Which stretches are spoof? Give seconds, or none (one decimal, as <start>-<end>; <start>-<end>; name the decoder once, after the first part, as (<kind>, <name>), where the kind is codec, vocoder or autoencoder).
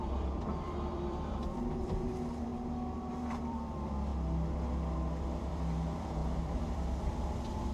0.0-2.5 (vocoder, BigVGAN v2); 3.1-4.1; 5.4-7.7